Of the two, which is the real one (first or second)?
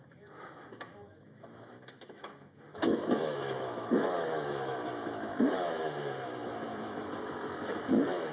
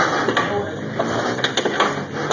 second